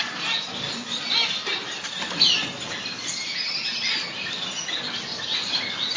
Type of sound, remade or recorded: recorded